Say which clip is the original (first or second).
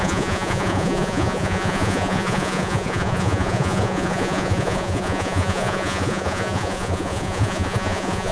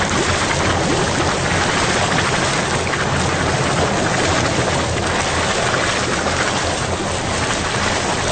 second